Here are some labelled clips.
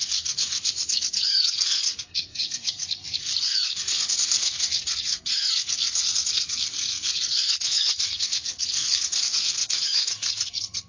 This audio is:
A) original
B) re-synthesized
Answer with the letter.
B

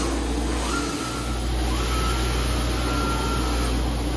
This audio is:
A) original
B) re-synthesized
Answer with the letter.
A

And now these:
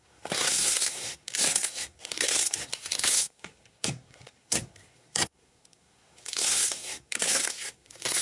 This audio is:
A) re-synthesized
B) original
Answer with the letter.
A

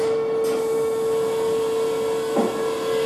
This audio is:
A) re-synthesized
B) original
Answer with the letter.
B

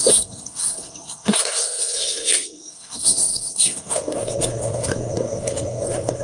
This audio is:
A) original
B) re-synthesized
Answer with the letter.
B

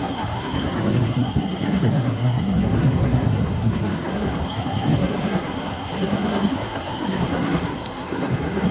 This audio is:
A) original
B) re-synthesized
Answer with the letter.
B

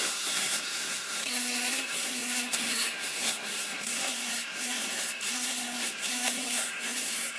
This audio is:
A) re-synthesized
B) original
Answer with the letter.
A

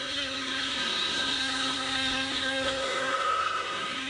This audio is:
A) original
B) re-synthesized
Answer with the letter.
B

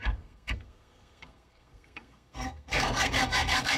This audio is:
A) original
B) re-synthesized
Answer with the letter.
B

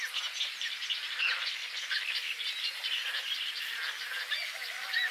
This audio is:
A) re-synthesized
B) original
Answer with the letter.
B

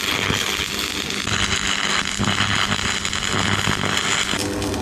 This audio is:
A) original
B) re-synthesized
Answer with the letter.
A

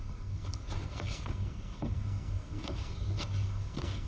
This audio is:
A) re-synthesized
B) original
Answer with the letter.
A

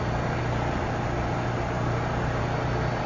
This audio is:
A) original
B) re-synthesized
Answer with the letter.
A